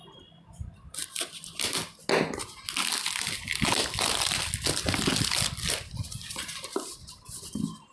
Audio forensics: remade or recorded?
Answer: recorded